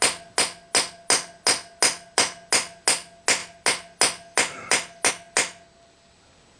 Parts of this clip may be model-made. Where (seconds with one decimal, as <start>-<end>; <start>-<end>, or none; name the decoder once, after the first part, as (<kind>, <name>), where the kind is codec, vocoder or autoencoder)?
none